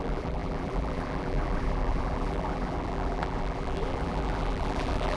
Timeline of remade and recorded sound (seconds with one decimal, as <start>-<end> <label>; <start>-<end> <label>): 0.0-5.2 remade